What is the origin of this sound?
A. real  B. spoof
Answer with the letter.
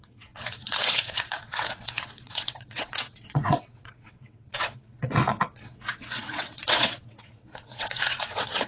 B